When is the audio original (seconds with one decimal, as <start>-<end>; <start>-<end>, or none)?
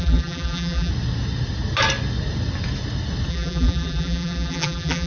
0.9-3.3